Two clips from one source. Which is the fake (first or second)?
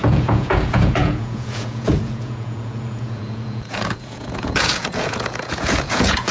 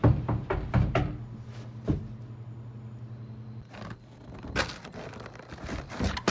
first